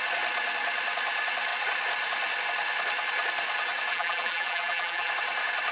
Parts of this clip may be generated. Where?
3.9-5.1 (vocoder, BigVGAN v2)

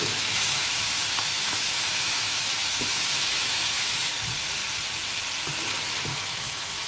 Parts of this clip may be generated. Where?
0.0-4.1 (autoencoder, DAC-VAE); 6.1-6.9

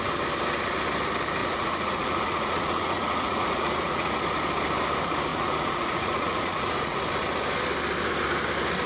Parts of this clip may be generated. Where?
1.4-4.1 (vocoder, Vocos); 5.3-7.0

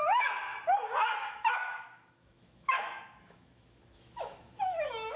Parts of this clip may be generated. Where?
0.0-0.5 (autoencoder, DAC-VAE); 1.3-5.2